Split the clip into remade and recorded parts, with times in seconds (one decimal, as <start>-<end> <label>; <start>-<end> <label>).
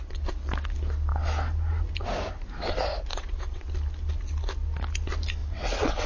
0.0-3.1 recorded; 3.1-3.7 remade; 3.7-5.4 recorded; 5.4-6.1 remade